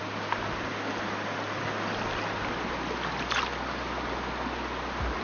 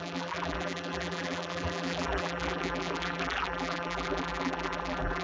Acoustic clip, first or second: first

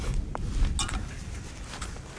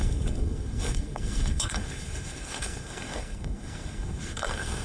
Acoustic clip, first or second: first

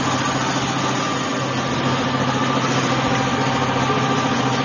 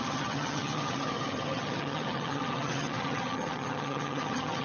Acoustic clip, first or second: first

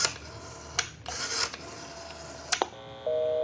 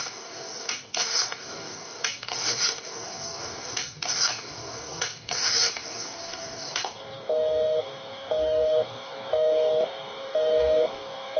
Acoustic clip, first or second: first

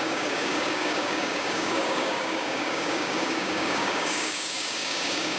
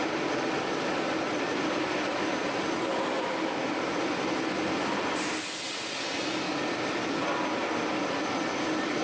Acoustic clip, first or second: second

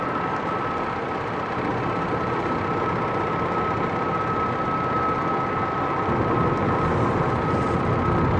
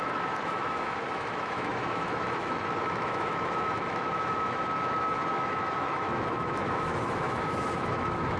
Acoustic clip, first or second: first